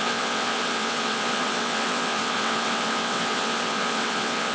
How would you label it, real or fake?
fake